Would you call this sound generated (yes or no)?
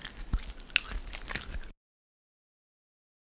no